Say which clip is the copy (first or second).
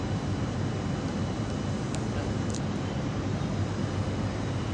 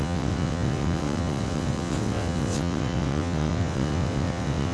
second